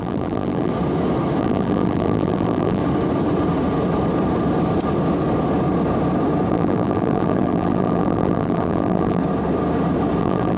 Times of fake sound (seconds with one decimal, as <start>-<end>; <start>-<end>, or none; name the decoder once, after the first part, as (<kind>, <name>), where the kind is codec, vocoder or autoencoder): 0.0-0.7 (vocoder, BigVGAN v2); 1.4-2.8; 6.5-9.2; 10.2-10.6